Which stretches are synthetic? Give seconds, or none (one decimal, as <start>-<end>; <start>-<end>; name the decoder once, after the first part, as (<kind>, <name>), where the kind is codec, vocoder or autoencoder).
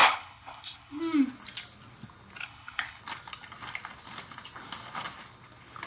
0.0-1.0 (codec, HILCodec); 2.4-3.0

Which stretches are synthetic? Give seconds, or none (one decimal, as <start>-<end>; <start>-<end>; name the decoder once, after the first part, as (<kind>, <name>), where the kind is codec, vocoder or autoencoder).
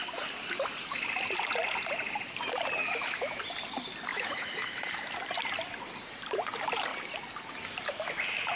2.8-3.4 (autoencoder, DAC-VAE); 4.1-5.0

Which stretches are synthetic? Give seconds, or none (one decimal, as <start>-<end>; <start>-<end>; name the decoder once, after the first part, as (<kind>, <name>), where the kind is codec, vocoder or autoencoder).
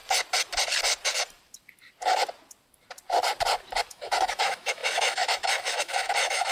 3.9-6.5 (autoencoder, DAC-VAE)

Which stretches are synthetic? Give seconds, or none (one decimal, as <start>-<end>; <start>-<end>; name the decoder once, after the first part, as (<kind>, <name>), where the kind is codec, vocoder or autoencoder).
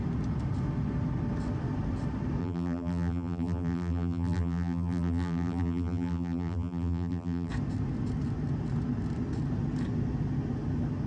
2.4-7.5 (vocoder, BigVGAN v2)